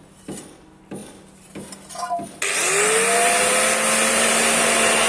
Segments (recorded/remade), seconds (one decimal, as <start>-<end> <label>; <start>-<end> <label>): 0.0-5.1 recorded